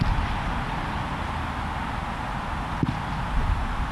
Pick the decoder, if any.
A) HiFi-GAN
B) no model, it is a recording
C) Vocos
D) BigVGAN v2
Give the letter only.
B